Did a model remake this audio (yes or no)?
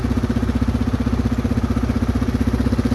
no